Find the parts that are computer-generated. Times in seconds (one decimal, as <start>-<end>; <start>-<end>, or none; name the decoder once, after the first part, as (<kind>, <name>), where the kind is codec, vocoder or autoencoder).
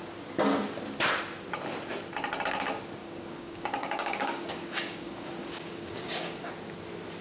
3.0-6.5 (codec, DAC)